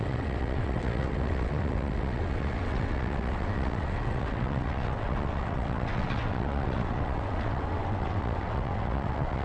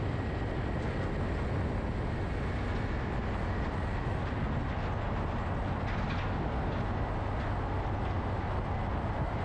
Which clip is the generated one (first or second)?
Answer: first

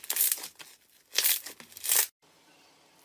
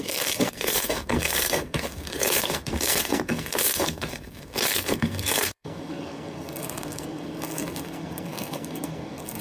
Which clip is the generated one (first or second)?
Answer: second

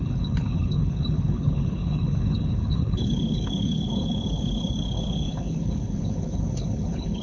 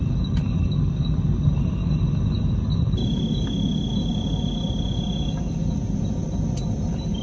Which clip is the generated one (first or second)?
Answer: first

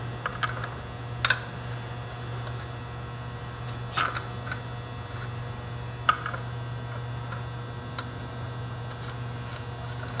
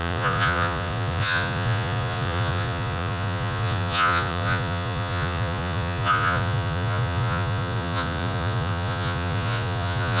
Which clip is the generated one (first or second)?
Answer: second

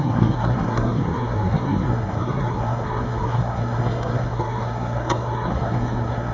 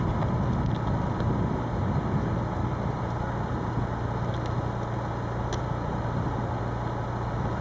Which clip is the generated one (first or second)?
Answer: first